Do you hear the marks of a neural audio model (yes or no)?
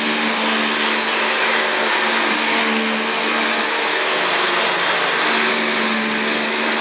no